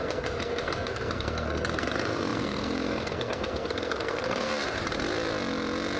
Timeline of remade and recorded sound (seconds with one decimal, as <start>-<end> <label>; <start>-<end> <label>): 0.0-4.5 remade; 4.5-6.0 recorded